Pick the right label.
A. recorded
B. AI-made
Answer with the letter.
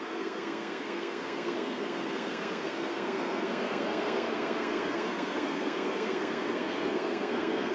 B